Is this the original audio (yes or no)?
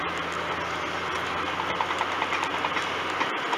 yes